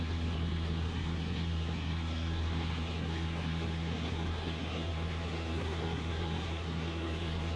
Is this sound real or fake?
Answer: fake